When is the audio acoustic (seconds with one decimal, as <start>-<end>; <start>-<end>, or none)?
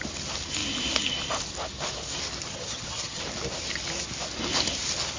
0.0-2.5; 3.2-5.2